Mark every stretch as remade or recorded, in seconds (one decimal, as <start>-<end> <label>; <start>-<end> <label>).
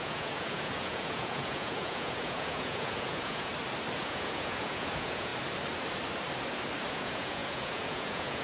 0.0-3.5 remade; 3.5-4.0 recorded; 4.0-5.3 remade; 5.3-6.9 recorded; 6.9-8.4 remade